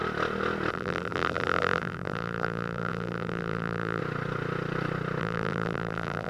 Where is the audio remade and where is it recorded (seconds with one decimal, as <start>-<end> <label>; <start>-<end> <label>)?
0.0-0.7 recorded; 0.7-4.0 remade; 4.0-5.2 recorded; 5.2-6.3 remade

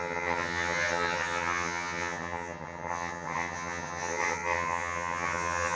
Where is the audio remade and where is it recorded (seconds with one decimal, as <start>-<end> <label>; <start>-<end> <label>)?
0.0-5.8 remade

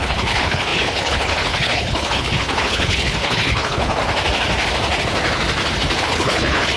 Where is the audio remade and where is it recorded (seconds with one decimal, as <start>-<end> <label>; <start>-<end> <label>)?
0.0-4.0 remade; 4.0-6.0 recorded; 6.0-6.8 remade